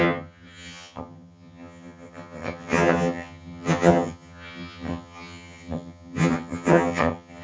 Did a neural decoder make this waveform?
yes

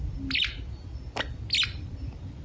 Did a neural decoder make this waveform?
no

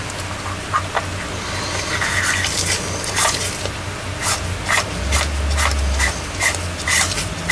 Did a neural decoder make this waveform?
no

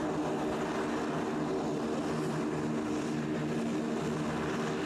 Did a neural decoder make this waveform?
no